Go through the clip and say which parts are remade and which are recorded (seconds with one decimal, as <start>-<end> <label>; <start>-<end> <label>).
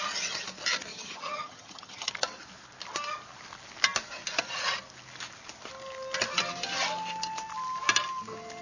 0.0-0.9 recorded; 0.9-2.1 remade; 2.1-8.6 recorded